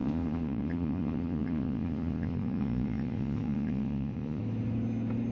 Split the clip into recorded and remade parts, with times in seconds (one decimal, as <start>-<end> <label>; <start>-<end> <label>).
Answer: 0.0-4.4 remade; 4.4-5.3 recorded